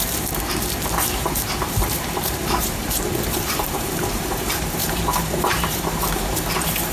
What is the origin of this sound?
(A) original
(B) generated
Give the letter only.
B